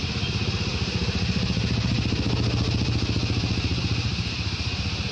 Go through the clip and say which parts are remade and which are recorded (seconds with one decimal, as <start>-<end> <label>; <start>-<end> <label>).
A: 0.0-5.1 recorded